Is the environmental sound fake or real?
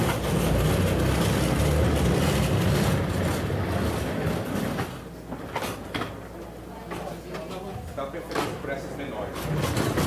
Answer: real